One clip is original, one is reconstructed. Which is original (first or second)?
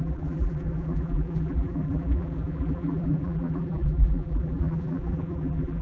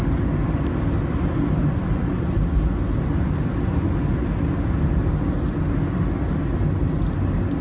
second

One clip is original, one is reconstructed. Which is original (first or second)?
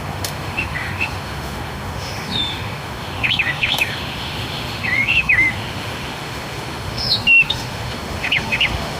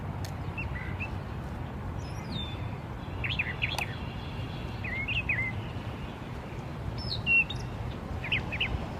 second